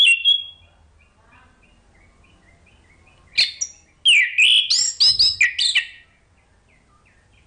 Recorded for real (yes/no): yes